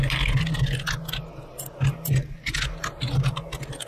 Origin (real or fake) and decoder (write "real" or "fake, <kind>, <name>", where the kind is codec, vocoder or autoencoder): real